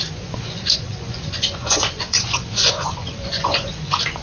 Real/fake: fake